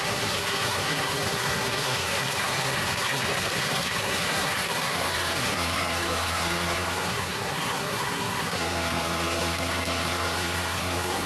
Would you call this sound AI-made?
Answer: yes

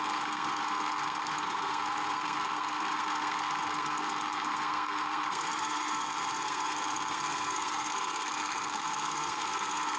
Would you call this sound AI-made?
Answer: yes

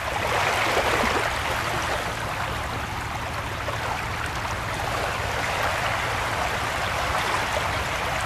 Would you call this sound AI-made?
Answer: no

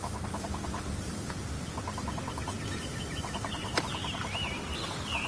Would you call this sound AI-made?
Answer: no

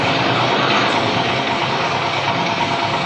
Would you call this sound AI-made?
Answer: yes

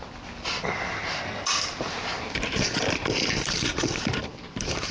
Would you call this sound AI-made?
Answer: no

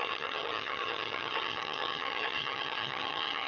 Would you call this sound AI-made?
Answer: yes